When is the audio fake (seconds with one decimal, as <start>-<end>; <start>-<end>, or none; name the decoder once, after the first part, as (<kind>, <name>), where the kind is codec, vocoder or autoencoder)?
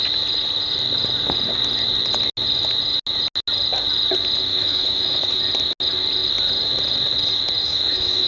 4.5-5.4 (autoencoder, DAC-VAE); 7.6-8.3